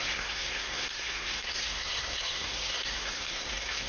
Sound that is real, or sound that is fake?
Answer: fake